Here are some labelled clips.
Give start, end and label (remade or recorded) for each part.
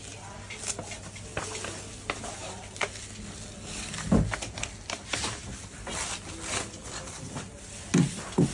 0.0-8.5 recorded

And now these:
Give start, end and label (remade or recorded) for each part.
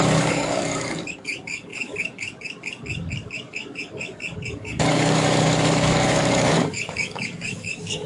0.0-8.1 remade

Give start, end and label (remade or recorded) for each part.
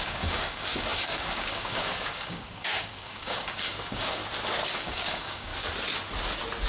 0.0-4.2 remade; 4.2-4.7 recorded; 4.7-5.5 remade; 5.5-6.7 recorded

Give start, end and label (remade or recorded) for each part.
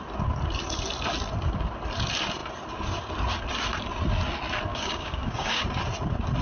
0.0-4.7 recorded; 4.7-5.6 remade; 5.6-6.4 recorded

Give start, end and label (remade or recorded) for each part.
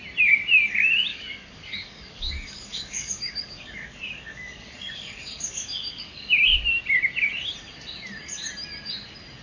0.0-1.1 recorded; 1.1-6.3 remade; 6.3-9.4 recorded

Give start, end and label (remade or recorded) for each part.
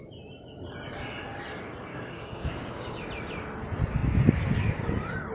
0.0-1.9 recorded; 1.9-3.1 remade; 3.1-5.3 recorded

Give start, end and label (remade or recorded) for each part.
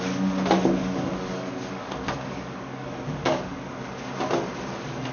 0.0-0.8 recorded; 0.8-3.9 remade; 3.9-5.1 recorded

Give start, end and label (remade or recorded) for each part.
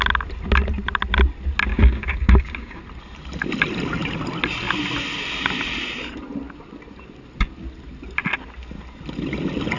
0.0-1.7 recorded; 1.7-2.8 remade; 2.8-9.8 recorded